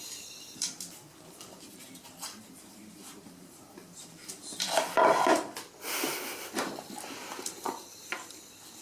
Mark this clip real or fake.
fake